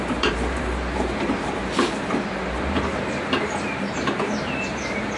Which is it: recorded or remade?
remade